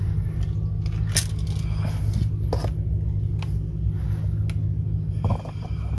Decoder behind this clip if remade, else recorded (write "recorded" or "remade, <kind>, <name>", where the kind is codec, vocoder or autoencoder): recorded